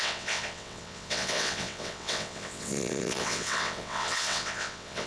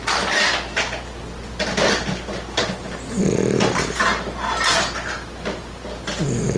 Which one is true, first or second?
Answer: second